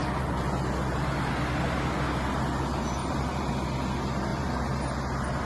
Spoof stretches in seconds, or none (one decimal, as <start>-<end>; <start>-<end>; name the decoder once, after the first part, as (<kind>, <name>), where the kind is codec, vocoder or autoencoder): 3.0-3.5 (vocoder, BigVGAN v2); 4.3-4.8